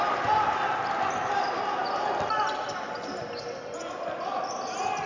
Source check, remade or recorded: recorded